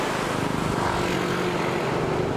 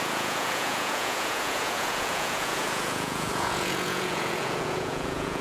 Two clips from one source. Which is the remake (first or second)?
second